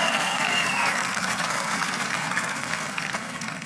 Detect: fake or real fake